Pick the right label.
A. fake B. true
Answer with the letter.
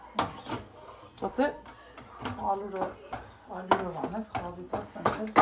B